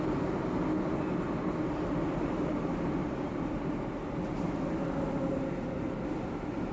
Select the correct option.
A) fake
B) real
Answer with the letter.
B